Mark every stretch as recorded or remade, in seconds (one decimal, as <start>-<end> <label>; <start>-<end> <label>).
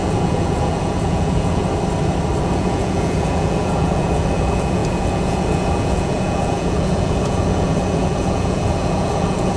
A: 0.0-1.6 remade; 1.6-2.4 recorded; 2.4-9.6 remade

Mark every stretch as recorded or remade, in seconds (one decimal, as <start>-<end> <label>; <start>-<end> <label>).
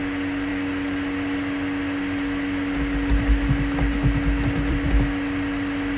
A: 0.0-6.0 recorded